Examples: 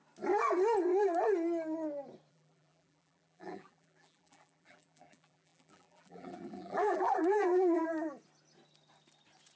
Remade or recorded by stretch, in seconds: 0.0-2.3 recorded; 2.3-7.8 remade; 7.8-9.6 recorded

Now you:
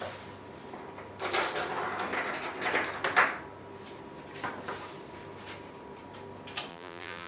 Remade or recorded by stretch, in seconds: 0.0-6.7 recorded; 6.7-7.3 remade

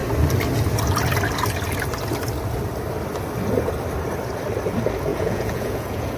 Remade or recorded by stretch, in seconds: 0.0-5.1 recorded; 5.1-6.2 remade

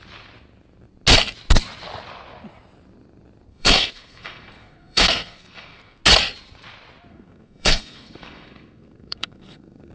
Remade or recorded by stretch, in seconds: 0.0-3.5 recorded; 3.5-6.0 remade; 6.0-7.1 recorded; 7.1-9.9 remade

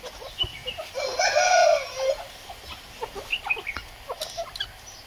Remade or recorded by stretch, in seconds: 0.0-5.1 recorded

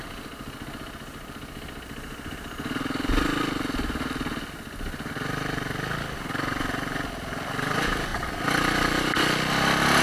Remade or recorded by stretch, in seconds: 0.0-10.0 recorded

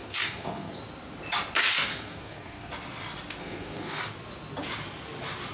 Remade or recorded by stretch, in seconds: 0.0-0.8 remade; 0.8-1.9 recorded; 1.9-2.7 remade; 2.7-3.4 recorded; 3.4-4.0 remade; 4.0-5.5 recorded